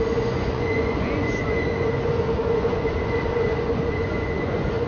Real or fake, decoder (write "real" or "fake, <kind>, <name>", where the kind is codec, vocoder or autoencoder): fake, vocoder, Vocos